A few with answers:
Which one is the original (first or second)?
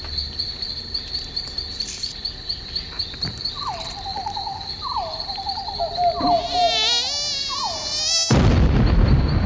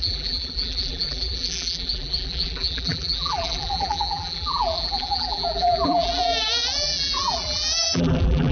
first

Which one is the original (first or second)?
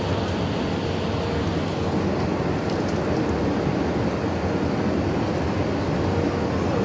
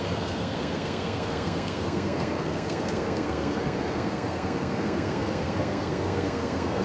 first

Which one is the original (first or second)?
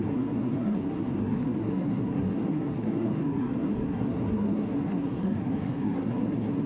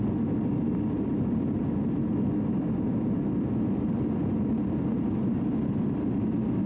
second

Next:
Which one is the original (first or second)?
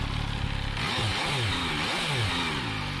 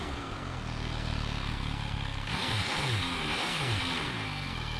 first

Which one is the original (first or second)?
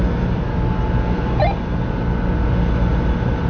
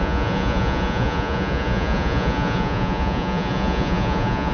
first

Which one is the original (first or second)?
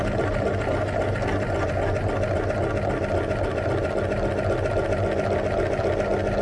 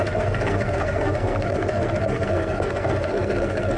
first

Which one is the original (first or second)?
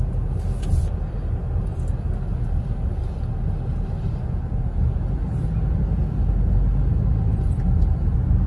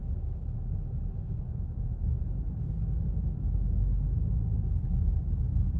first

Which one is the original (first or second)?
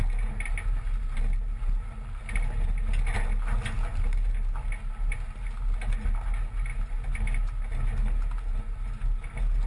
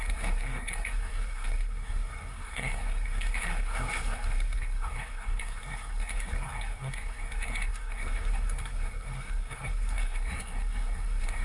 first